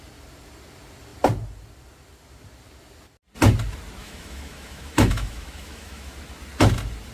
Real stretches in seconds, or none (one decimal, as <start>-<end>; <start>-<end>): 0.0-4.0; 6.1-7.1